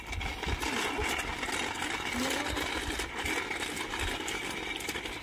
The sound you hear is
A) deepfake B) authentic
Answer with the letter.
B